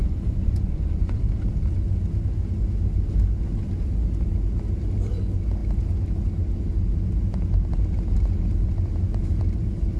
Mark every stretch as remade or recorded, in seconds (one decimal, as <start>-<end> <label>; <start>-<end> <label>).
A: 0.0-1.2 remade; 1.2-10.0 recorded